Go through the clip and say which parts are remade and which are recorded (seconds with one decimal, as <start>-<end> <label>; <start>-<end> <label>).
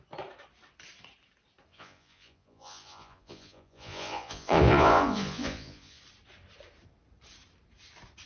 0.0-1.7 recorded; 1.7-6.0 remade; 6.0-8.3 recorded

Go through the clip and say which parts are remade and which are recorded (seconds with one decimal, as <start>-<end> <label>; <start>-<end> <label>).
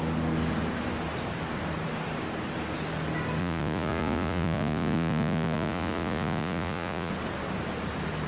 0.0-3.4 recorded; 3.4-7.1 remade; 7.1-8.3 recorded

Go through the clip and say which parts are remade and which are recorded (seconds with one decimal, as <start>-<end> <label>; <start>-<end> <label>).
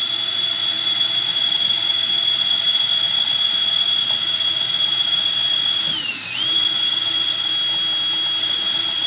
0.0-7.5 remade; 7.5-8.4 recorded; 8.4-9.1 remade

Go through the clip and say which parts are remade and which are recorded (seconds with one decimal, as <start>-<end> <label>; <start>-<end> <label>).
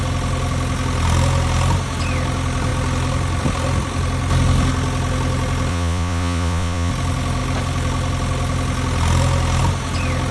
0.0-5.7 recorded; 5.7-6.9 remade; 6.9-10.3 recorded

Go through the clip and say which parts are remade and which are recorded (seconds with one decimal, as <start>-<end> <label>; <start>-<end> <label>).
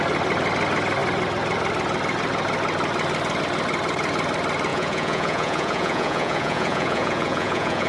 0.0-4.7 recorded; 4.7-7.9 remade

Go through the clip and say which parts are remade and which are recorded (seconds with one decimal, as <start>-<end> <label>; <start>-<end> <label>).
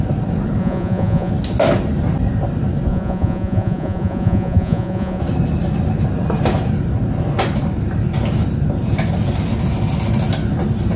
0.0-0.6 recorded; 0.6-1.3 remade; 1.3-2.9 recorded; 2.9-5.2 remade; 5.2-11.0 recorded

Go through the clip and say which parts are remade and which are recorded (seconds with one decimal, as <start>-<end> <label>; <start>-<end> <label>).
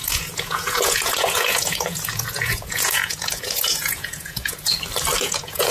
0.0-4.7 remade; 4.7-5.2 recorded; 5.2-5.7 remade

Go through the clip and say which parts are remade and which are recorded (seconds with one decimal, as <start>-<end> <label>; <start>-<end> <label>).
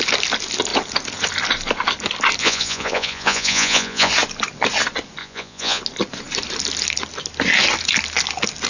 0.0-2.4 recorded; 2.4-4.1 remade; 4.1-5.2 recorded; 5.2-5.8 remade; 5.8-8.7 recorded